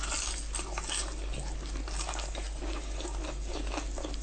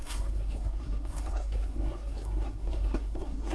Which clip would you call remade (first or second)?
second